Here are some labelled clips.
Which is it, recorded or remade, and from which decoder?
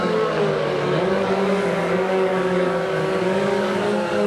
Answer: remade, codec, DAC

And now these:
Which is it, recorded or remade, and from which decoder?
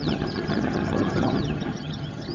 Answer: remade, vocoder, HiFi-GAN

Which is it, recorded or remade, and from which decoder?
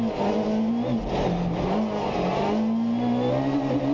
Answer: recorded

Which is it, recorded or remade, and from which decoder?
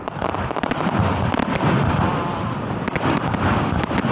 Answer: recorded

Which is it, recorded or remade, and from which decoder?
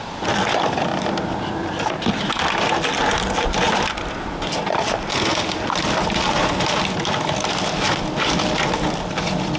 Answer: recorded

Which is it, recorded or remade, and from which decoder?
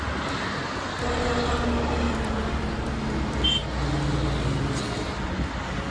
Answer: recorded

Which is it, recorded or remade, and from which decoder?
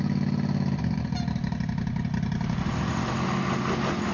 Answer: recorded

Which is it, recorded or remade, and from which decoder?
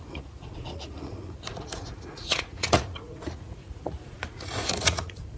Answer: remade, vocoder, Vocos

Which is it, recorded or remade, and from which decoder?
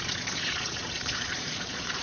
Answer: remade, vocoder, Vocos